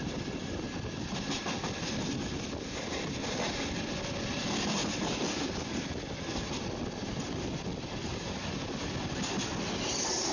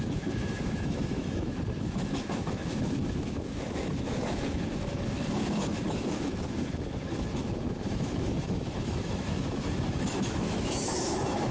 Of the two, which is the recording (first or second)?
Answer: first